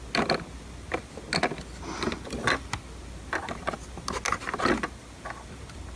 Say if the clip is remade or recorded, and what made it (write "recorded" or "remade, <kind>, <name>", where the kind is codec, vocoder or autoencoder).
recorded